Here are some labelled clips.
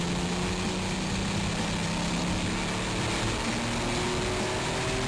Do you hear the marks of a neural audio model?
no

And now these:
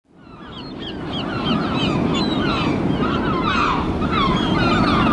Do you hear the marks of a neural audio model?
no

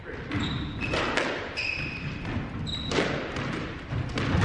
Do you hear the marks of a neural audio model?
no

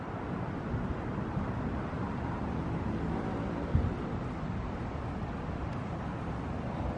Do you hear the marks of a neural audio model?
no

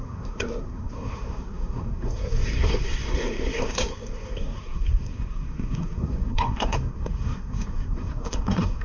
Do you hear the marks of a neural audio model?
yes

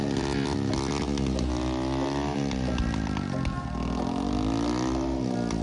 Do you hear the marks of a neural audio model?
no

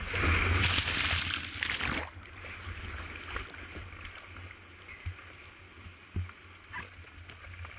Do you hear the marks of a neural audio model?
no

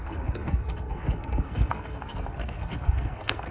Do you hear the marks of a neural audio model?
yes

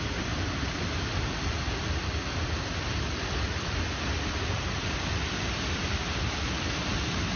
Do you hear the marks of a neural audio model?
no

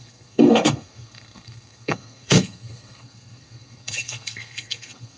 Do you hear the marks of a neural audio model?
yes